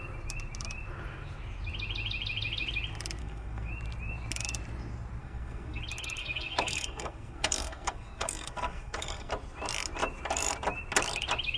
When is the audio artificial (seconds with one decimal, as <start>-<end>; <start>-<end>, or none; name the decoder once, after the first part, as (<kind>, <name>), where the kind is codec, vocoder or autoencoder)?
3.2-3.7 (codec, SNAC); 5.2-5.8; 6.2-9.3